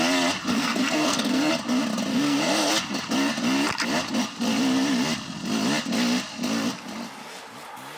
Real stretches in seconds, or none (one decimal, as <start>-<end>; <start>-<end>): 0.0-0.5; 1.5-2.1; 2.7-8.0